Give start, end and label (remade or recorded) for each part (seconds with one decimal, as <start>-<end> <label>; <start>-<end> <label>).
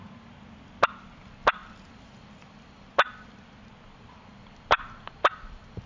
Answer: 0.0-5.9 recorded